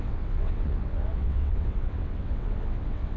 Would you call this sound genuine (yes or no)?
no